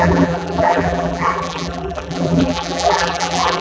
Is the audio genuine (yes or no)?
no